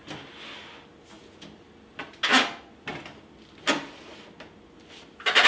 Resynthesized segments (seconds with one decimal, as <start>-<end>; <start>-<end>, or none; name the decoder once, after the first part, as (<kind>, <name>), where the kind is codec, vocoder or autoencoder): none